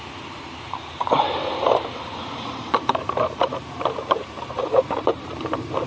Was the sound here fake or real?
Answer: fake